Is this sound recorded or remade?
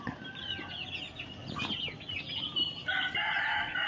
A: recorded